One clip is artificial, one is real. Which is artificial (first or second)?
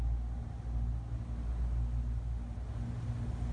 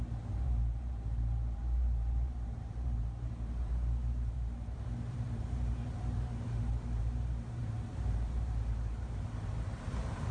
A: second